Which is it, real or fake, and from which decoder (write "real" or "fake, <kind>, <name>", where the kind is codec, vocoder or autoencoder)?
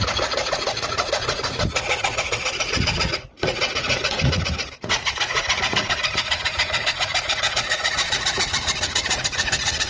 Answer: fake, vocoder, Vocos